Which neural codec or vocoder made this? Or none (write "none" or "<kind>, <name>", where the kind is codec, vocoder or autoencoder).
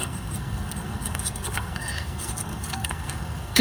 codec, SNAC